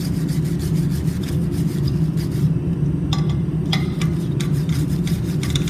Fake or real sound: real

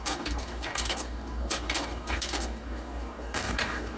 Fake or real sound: fake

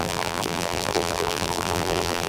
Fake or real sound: fake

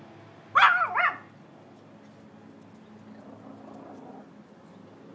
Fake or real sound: real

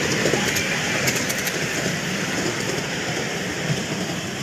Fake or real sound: real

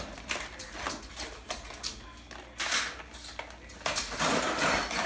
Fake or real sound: real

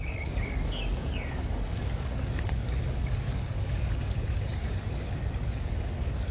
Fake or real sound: fake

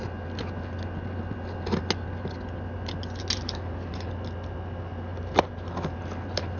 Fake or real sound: real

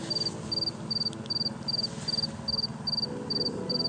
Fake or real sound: real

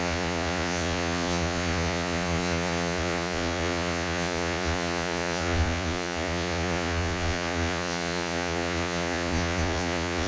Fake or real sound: fake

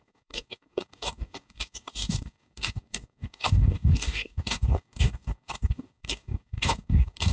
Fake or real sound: fake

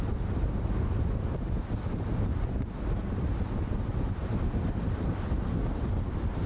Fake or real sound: real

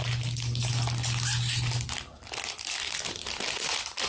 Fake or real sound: real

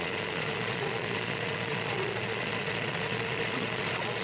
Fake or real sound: fake